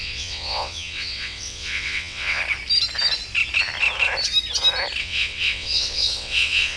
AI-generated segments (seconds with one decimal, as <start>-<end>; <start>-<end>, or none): 0.0-2.4; 5.0-6.8